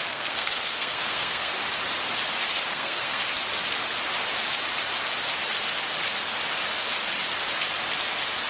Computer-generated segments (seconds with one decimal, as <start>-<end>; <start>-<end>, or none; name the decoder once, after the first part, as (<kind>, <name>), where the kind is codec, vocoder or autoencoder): 0.0-1.5 (codec, SNAC); 2.7-3.2